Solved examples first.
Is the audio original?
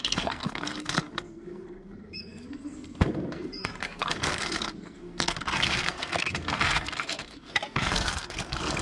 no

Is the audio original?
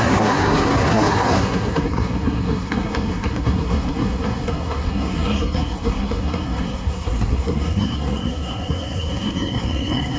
no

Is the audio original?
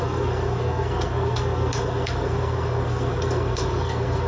no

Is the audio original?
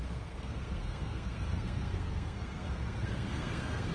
no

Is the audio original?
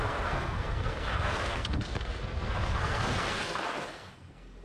no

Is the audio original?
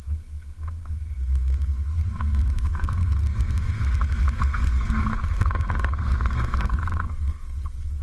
no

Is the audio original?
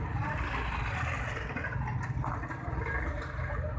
yes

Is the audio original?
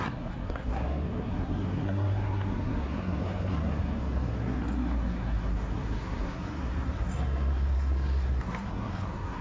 no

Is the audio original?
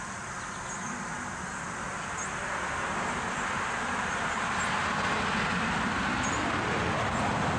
yes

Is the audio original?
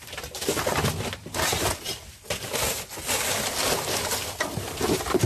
yes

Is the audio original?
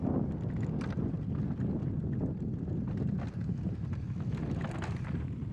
yes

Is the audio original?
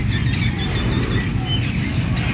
yes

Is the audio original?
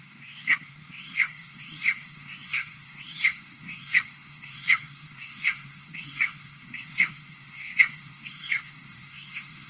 no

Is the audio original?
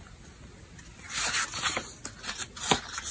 yes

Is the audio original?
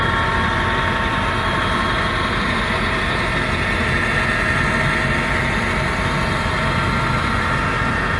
yes